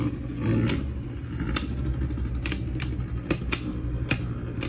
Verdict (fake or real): real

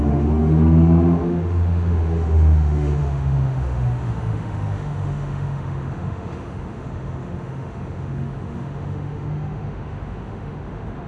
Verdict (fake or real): fake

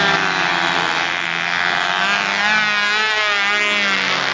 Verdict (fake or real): real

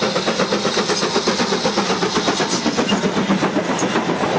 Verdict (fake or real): real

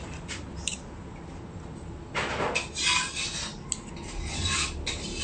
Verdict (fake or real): real